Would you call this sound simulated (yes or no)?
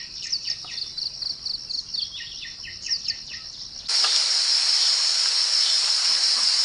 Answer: no